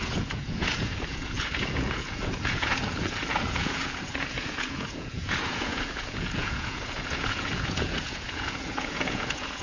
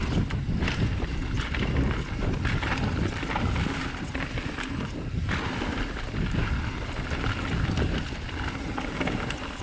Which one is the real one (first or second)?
second